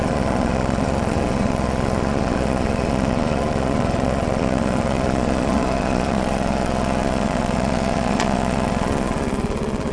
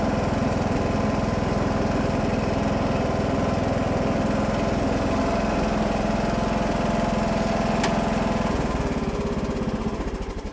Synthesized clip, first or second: first